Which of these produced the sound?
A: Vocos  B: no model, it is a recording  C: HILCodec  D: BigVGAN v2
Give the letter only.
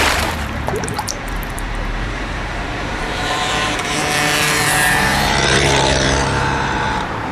D